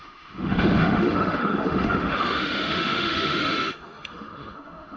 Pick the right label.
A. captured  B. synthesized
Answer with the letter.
B